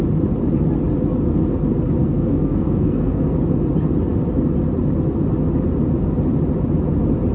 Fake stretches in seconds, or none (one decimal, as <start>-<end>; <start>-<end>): 2.0-3.4